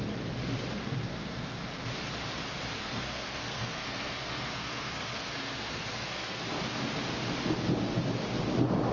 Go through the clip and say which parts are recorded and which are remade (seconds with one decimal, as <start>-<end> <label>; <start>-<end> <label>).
0.0-0.8 recorded; 0.8-1.6 remade; 1.6-2.8 recorded; 2.8-6.4 remade; 6.4-8.9 recorded